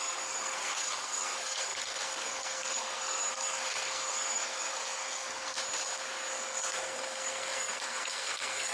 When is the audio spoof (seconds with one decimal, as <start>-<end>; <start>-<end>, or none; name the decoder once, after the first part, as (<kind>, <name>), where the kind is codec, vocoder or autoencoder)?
0.0-5.6 (codec, SNAC); 6.3-8.7